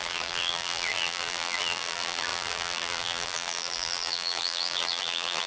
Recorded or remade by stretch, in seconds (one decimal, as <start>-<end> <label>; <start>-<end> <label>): 0.0-5.5 remade